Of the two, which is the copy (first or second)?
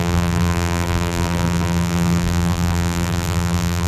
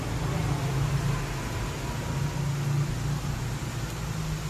first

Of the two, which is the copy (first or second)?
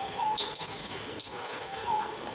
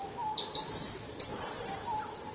first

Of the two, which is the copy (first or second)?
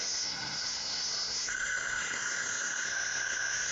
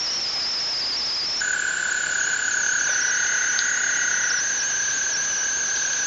first